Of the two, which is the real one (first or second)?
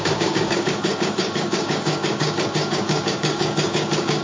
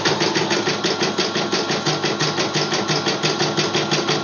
second